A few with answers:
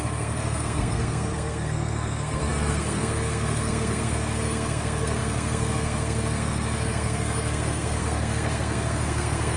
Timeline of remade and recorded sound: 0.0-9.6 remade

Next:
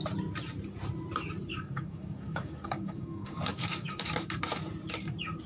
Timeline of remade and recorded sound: 0.0-1.5 recorded; 1.5-4.0 remade; 4.0-5.5 recorded

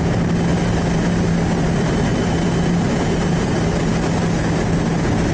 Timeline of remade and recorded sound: 0.0-0.5 recorded; 0.5-1.3 remade; 1.3-2.1 recorded; 2.1-3.6 remade; 3.6-5.3 recorded

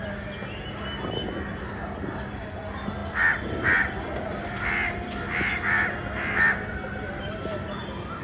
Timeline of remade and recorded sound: 0.0-3.0 recorded; 3.0-6.4 remade; 6.4-8.2 recorded

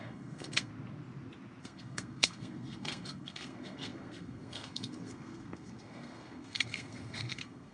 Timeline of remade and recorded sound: 0.0-0.7 remade; 0.7-1.6 recorded; 1.6-7.7 remade

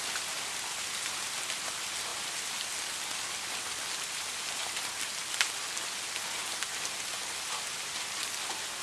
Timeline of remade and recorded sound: 0.0-8.8 recorded

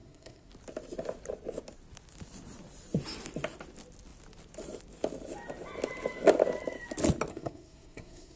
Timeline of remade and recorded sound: 0.0-0.5 remade; 0.5-7.3 recorded; 7.3-8.4 remade